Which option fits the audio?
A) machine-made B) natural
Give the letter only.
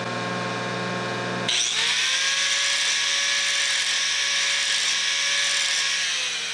B